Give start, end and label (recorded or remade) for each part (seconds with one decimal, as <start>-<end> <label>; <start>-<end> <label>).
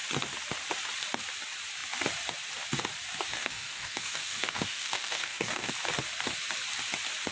0.0-3.3 recorded; 3.3-5.7 remade; 5.7-7.3 recorded